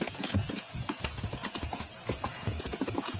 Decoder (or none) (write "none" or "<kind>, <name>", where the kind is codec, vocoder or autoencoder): vocoder, Vocos